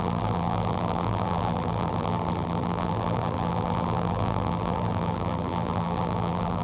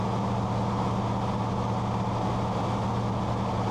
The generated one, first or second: first